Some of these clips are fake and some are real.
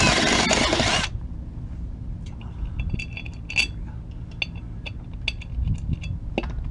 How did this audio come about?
real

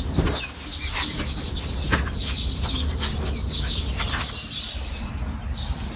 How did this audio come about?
real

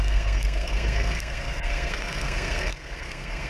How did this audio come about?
fake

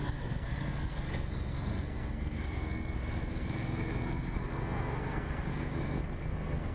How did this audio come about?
fake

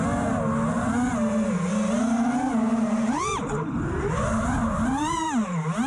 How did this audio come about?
real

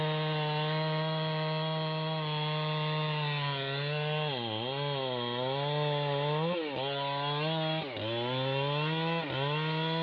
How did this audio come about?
real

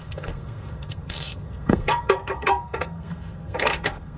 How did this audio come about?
fake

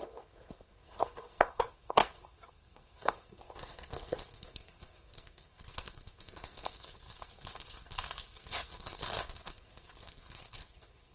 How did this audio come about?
fake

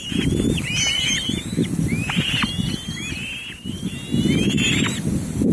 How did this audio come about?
real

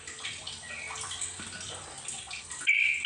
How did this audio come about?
real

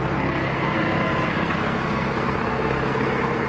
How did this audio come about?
fake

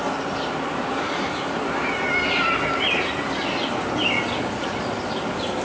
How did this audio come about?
real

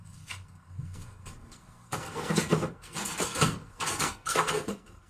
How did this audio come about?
fake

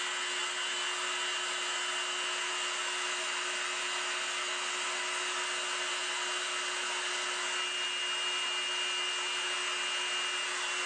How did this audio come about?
real